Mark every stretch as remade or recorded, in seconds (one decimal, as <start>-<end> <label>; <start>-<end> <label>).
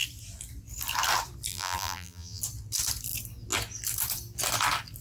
0.0-1.5 recorded; 1.5-2.4 remade; 2.4-5.0 recorded